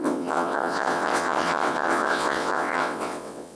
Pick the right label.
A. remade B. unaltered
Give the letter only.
A